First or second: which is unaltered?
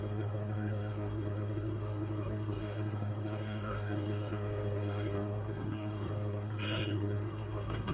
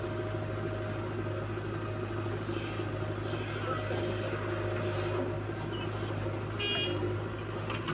second